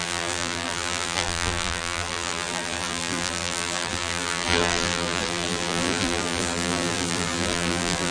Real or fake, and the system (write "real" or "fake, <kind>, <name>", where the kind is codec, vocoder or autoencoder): fake, vocoder, BigVGAN v2